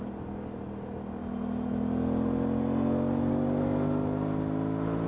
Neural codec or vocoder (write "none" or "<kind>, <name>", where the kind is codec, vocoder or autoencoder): none